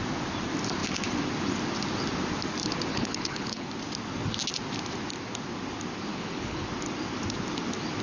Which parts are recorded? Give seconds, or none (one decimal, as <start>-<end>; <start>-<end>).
0.0-2.9; 3.7-6.1; 6.7-8.0